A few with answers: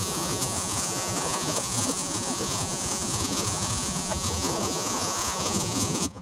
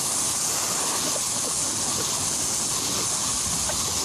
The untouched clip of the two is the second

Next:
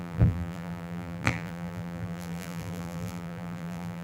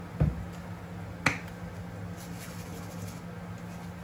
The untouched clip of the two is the second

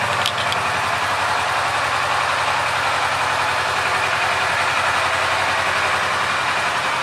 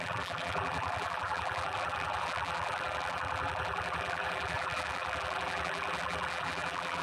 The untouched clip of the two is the first